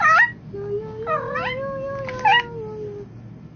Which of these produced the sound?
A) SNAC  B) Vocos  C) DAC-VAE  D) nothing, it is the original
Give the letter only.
D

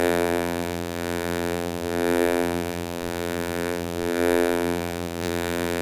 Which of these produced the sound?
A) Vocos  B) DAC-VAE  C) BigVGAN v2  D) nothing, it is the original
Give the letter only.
C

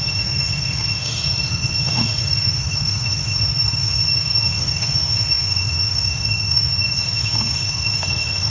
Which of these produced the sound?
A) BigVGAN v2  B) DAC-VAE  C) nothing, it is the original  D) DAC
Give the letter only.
B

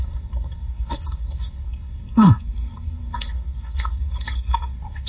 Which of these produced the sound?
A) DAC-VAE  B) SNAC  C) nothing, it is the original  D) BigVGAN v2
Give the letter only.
B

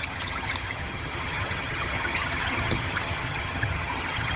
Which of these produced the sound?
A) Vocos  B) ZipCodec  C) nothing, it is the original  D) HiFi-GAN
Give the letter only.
D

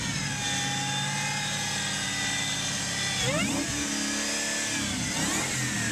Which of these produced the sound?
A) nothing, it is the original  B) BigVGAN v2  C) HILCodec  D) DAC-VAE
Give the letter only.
A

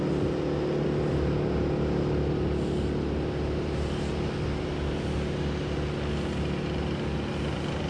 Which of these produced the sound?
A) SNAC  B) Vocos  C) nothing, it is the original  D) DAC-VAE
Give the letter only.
C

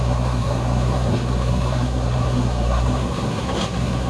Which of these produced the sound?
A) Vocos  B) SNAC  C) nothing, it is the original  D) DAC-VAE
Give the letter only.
B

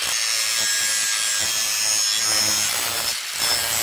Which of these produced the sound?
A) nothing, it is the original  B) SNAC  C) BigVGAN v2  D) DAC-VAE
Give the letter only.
A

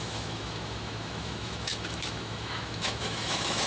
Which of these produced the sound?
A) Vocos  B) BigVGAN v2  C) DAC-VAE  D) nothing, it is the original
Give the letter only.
C